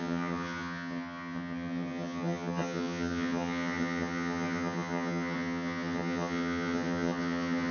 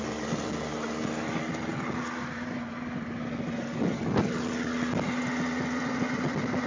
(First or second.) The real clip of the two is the second